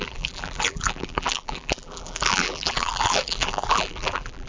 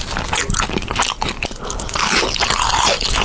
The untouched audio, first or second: second